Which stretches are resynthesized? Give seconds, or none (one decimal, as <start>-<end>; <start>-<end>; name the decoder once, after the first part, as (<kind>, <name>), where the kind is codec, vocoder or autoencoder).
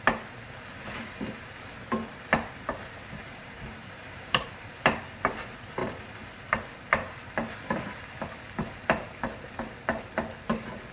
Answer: 3.2-4.7 (vocoder, BigVGAN v2); 5.8-6.6